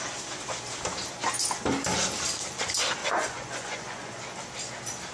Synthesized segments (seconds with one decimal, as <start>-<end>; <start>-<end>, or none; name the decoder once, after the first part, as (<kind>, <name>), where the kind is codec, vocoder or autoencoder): 3.0-4.2 (vocoder, Vocos)

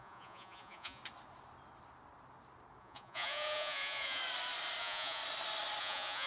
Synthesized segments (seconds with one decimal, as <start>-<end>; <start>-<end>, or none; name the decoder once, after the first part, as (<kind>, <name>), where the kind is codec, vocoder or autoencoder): 0.0-1.0 (vocoder, Vocos); 2.8-4.2; 4.8-5.2; 5.8-6.3

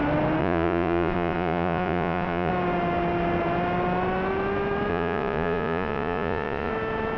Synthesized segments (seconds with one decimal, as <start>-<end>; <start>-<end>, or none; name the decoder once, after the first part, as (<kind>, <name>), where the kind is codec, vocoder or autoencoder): 0.4-2.5 (vocoder, Vocos); 4.9-6.7

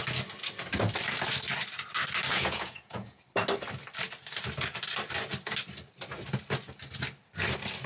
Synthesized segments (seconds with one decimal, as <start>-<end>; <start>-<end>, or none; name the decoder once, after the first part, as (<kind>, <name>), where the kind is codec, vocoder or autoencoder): 2.3-3.2 (vocoder, Vocos)

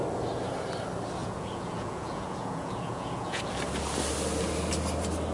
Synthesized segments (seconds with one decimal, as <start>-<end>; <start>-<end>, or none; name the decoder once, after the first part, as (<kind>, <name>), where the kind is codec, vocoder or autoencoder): 1.2-3.4 (vocoder, Vocos)